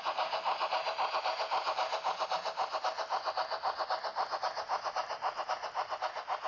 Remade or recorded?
recorded